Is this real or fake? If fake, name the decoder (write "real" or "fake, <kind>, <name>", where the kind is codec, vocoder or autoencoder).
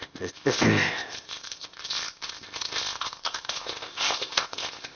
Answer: fake, codec, ZipCodec